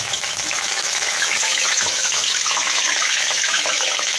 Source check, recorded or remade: remade